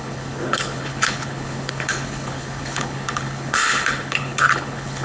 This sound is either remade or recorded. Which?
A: remade